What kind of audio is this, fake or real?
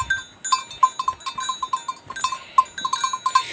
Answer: real